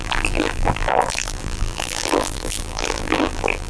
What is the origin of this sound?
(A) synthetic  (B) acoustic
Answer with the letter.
A